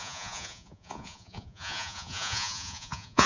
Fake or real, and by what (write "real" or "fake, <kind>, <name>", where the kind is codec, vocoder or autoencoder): fake, vocoder, Vocos